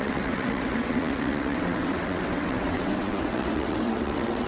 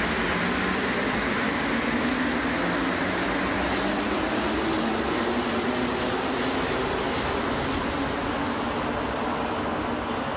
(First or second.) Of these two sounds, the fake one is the first